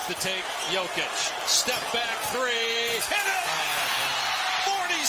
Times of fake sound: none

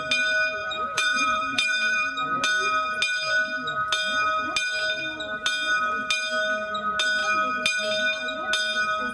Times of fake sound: 0.6-2.1 (vocoder, BigVGAN v2)

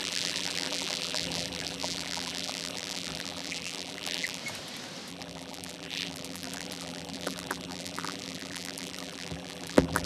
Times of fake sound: 0.0-4.4 (vocoder, BigVGAN v2); 5.1-10.1

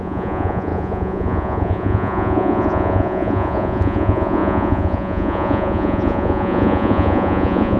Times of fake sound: 0.0-7.8 (vocoder, Vocos)

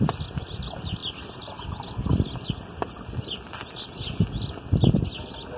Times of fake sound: none

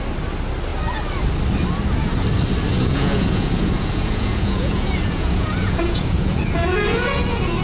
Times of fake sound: 2.7-7.6 (vocoder, Vocos)

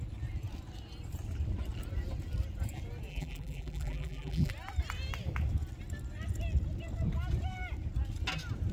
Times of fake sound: 3.1-4.5 (vocoder, BigVGAN v2)

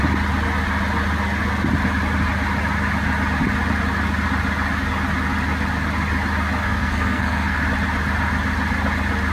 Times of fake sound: 6.6-7.6 (codec, SNAC)